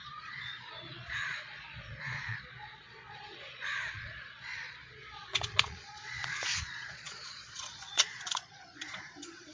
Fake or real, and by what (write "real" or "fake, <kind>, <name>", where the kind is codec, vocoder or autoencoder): fake, vocoder, Vocos